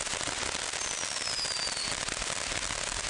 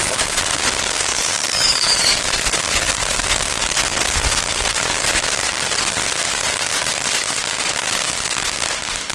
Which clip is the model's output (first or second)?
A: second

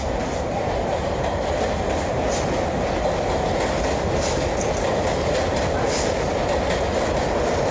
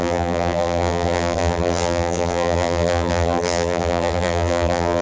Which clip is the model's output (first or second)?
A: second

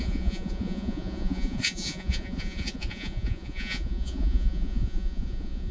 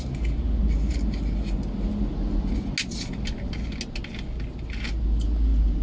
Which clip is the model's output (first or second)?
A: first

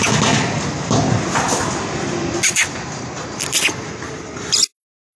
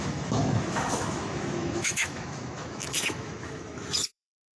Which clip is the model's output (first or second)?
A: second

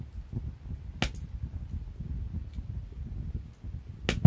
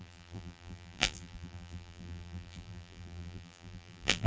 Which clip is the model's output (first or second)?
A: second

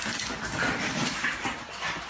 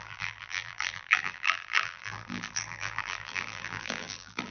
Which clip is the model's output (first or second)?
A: second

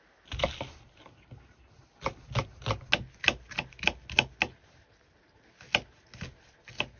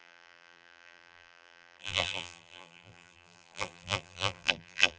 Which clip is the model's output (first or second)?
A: second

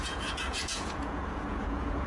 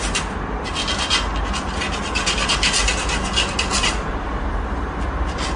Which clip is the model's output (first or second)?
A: first